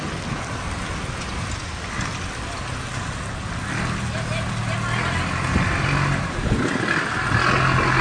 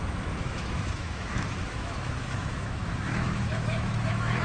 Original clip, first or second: first